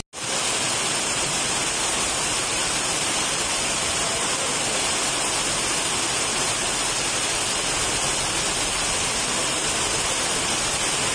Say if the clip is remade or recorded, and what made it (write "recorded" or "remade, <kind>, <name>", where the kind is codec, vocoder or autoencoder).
recorded